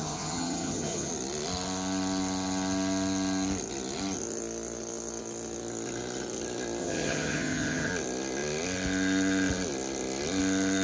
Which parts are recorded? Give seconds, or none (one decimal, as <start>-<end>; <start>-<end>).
1.1-6.8; 7.9-10.8